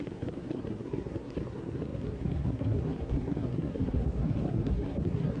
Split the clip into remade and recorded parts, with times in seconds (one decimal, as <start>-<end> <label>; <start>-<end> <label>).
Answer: 0.0-5.4 remade